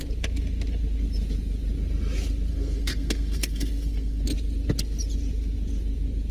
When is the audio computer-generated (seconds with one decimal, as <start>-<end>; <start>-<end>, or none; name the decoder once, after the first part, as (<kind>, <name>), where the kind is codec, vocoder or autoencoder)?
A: 2.5-4.2 (codec, SNAC)